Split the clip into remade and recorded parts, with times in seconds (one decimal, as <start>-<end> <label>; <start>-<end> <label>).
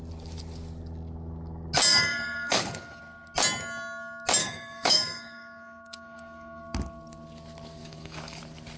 0.0-1.9 recorded; 1.9-3.0 remade; 3.0-4.4 recorded; 4.4-6.6 remade; 6.6-7.8 recorded; 7.8-8.4 remade; 8.4-8.8 recorded